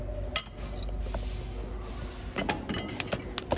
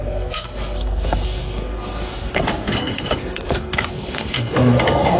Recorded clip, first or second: first